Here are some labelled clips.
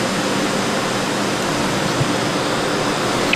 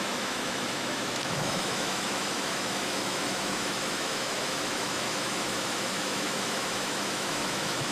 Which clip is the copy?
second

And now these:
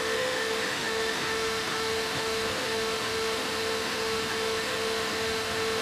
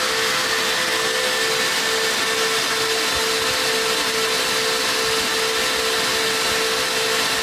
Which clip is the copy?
first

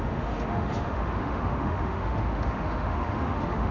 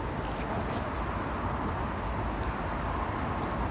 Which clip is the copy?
first